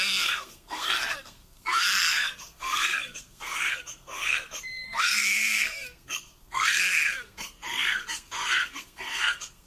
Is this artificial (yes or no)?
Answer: yes